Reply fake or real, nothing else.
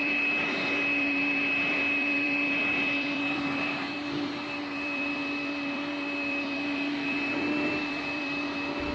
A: fake